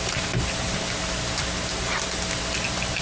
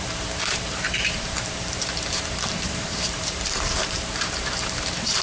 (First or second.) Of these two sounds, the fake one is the second